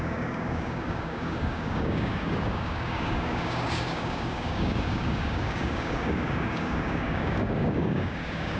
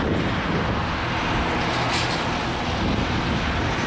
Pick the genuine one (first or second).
second